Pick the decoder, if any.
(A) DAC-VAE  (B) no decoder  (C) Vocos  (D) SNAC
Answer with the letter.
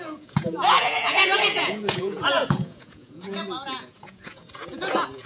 C